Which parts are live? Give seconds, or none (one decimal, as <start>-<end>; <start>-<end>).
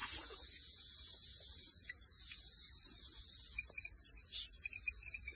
3.2-5.4